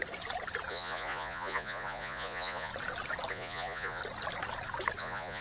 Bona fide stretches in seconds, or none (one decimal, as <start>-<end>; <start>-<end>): 0.0-0.7; 2.7-3.3; 4.0-5.0